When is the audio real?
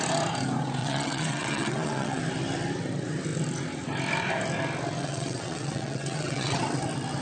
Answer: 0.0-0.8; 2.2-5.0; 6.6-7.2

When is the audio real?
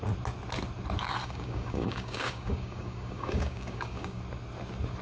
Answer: 0.0-1.2; 4.2-5.0